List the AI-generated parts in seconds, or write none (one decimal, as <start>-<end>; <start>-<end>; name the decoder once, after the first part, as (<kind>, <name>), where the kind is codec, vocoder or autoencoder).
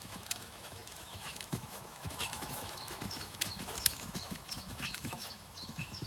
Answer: 0.0-6.1 (autoencoder, DAC-VAE)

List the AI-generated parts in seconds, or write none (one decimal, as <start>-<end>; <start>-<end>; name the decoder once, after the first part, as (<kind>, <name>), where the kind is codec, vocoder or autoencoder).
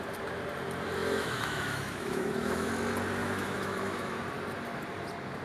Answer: 1.0-2.7 (autoencoder, DAC-VAE); 3.2-4.2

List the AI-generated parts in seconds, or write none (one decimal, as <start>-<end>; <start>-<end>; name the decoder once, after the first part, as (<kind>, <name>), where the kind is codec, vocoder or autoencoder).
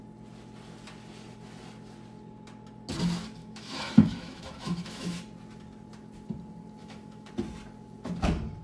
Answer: 3.4-5.2 (autoencoder, DAC-VAE); 6.8-7.3